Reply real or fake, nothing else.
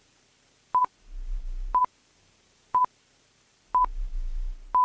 real